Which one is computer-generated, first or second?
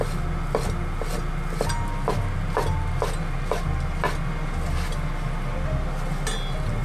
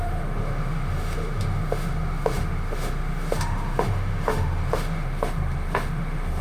second